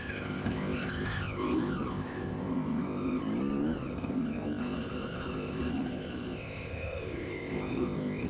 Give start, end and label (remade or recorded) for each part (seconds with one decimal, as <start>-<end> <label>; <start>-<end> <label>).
0.0-3.2 remade; 3.2-3.9 recorded; 3.9-8.3 remade